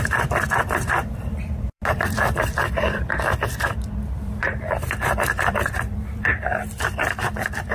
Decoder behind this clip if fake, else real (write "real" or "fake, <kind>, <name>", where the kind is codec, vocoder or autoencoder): fake, vocoder, BigVGAN v2